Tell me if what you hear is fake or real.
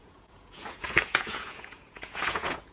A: fake